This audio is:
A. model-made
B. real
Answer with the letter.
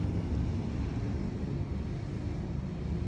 B